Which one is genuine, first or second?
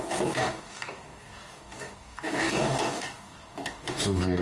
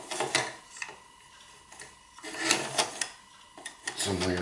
second